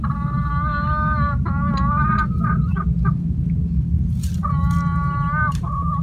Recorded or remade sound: recorded